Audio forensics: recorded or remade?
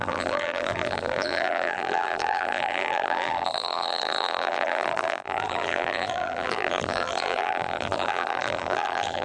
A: remade